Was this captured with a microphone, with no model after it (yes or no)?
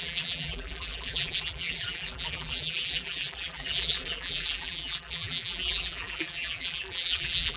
no